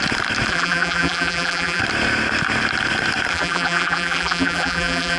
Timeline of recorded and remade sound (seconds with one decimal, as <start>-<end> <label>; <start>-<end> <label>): 0.0-0.5 recorded; 0.5-1.8 remade; 1.8-3.3 recorded; 3.3-5.2 remade

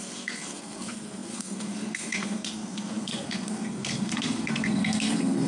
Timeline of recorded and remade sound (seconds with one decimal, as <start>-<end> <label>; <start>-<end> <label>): 0.0-5.5 remade